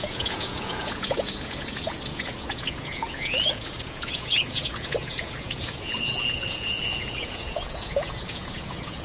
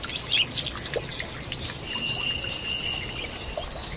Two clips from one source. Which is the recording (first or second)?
second